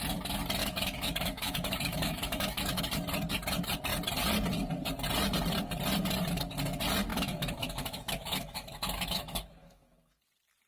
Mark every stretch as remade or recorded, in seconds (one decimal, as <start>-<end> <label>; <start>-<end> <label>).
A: 0.0-0.6 recorded; 0.6-2.8 remade; 2.8-7.1 recorded; 7.1-10.2 remade; 10.2-10.7 recorded